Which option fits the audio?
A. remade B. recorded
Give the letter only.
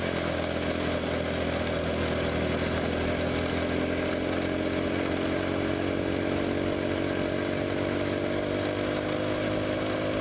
B